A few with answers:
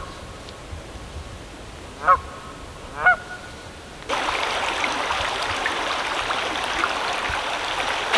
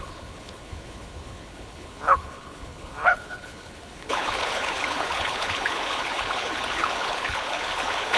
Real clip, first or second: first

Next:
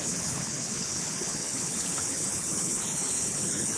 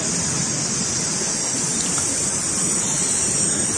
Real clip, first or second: second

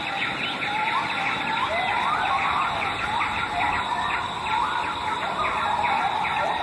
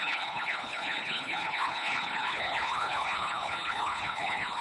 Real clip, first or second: first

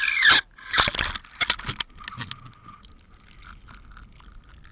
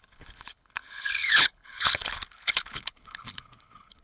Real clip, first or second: first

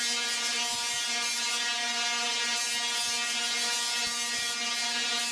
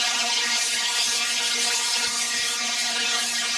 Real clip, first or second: first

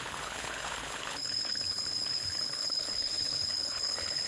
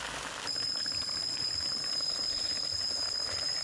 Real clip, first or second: second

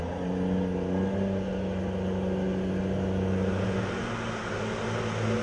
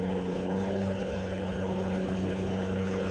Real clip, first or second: first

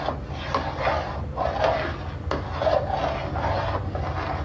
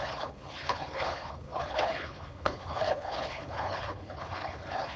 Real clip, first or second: first